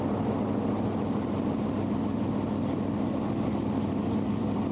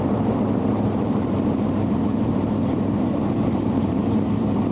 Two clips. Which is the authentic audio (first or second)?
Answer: first